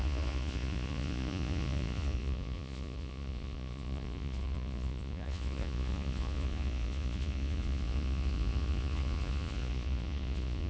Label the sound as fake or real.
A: fake